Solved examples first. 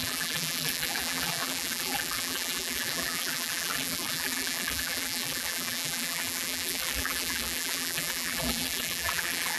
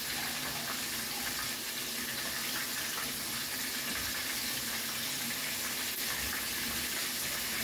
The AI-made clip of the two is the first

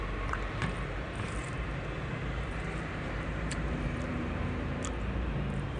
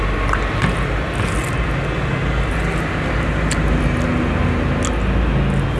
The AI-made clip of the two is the first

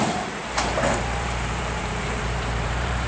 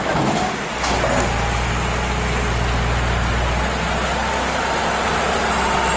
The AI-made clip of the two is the first